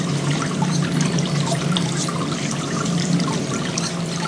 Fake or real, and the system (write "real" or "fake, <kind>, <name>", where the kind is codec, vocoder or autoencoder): fake, vocoder, BigVGAN v2